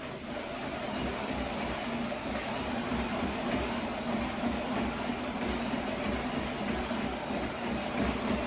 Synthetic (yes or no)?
no